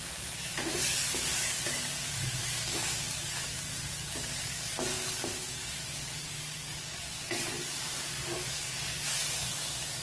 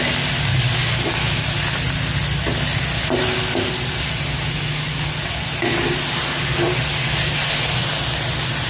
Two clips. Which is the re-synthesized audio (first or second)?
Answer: first